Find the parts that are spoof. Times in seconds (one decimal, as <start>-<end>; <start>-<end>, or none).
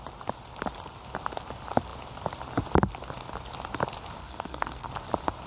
4.2-4.9